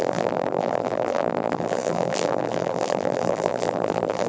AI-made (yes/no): yes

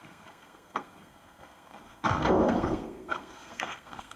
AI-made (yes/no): yes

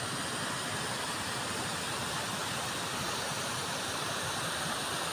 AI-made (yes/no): no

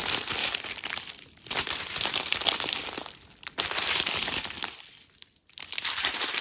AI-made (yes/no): yes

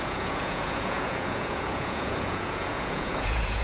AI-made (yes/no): yes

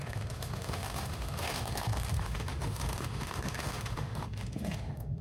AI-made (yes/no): yes